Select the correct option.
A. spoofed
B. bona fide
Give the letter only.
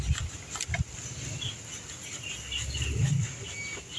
B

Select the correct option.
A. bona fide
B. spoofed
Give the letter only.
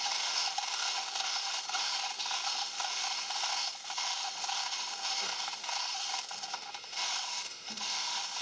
B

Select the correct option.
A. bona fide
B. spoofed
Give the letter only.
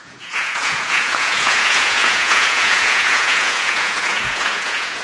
B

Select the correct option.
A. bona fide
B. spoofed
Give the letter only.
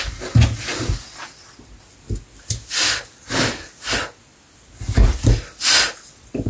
A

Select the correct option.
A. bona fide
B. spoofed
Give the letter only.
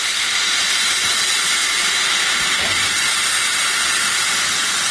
A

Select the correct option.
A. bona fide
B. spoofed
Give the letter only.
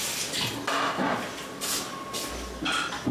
A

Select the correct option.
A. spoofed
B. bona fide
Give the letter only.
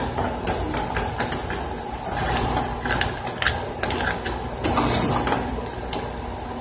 B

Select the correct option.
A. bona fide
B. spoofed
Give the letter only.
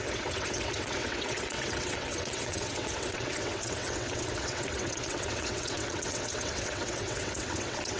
B